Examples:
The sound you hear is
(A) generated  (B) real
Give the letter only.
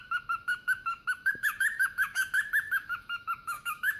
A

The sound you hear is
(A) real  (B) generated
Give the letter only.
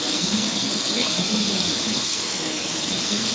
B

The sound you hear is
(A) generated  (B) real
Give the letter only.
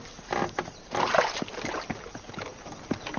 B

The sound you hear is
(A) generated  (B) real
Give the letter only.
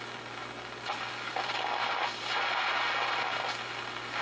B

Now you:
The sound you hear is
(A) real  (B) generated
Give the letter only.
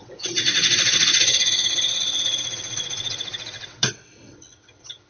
B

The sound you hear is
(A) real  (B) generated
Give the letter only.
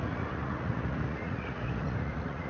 B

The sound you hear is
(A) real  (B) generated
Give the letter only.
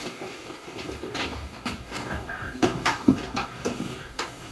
B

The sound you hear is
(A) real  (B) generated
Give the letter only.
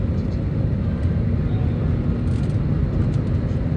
A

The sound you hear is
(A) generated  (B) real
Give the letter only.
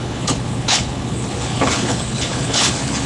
A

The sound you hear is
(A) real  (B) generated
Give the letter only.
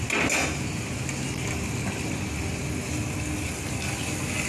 A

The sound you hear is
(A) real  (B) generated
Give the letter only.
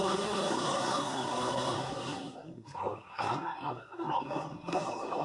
B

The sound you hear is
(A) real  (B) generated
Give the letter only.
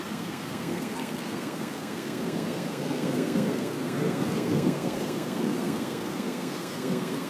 B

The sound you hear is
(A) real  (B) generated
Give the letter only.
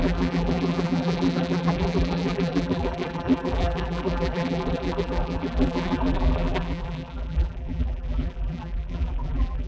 B